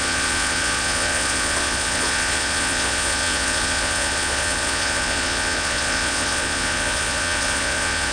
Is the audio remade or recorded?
remade